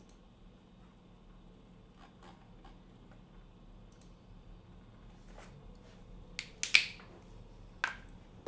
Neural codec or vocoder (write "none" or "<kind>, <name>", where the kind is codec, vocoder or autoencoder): none